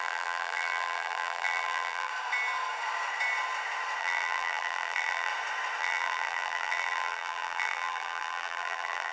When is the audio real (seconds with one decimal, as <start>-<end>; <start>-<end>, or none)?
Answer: 2.1-4.0; 5.3-5.8